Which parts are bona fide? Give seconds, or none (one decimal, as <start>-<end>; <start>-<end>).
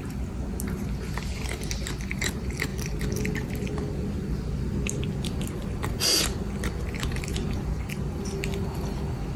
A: 0.0-9.4